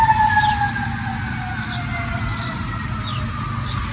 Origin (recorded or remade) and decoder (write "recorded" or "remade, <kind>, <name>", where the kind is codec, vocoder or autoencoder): recorded